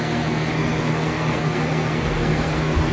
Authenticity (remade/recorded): remade